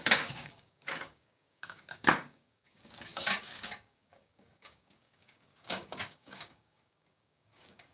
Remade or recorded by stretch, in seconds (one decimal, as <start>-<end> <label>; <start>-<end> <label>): 0.0-7.9 remade